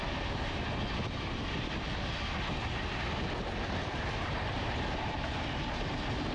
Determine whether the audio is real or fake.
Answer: real